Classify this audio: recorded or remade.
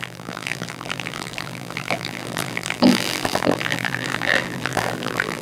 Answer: remade